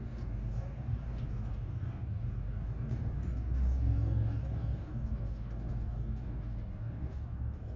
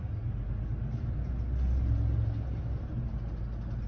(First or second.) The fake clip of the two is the first